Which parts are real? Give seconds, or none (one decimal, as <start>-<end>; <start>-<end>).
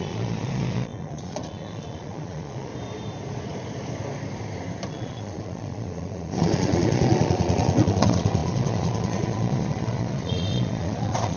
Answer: 2.7-4.9